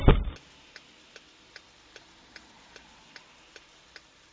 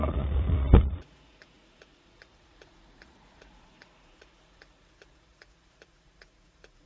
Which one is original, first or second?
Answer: first